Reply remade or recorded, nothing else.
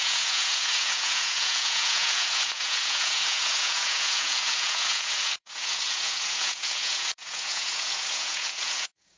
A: remade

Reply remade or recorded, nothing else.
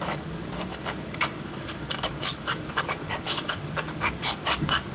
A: remade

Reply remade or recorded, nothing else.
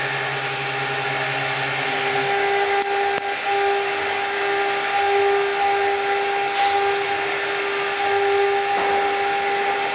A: recorded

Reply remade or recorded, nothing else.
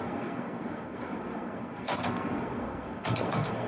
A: remade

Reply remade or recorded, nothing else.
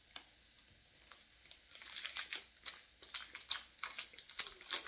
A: recorded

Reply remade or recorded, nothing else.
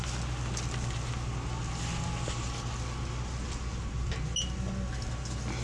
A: recorded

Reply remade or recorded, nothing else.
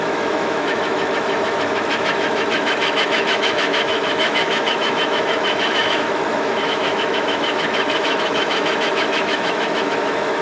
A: remade